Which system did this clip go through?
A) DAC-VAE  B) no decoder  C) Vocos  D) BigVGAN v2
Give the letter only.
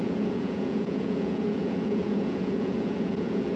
C